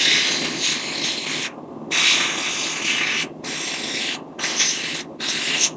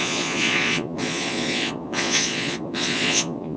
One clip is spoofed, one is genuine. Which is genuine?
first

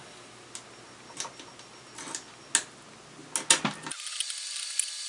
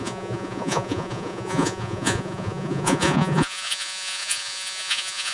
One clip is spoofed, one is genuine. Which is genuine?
first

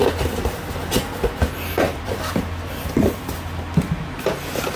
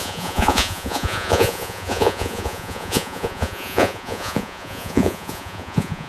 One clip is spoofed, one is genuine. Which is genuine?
first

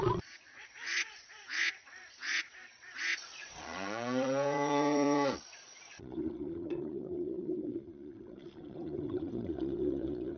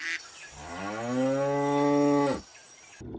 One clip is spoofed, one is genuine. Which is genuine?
second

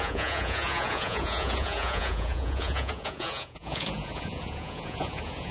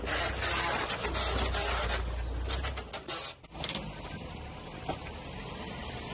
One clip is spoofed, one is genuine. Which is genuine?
second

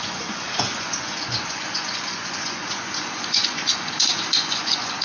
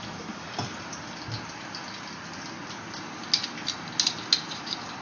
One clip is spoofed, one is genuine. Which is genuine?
second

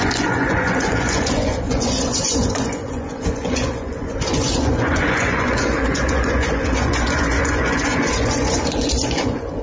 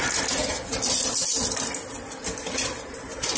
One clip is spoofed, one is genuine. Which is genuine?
second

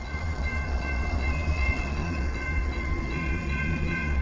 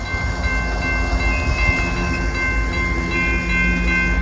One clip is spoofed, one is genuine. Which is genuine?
second